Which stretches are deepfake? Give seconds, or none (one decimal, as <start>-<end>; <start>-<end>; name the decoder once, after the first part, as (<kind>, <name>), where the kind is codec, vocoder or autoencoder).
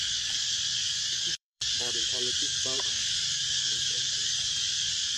0.0-5.2 (codec, DAC)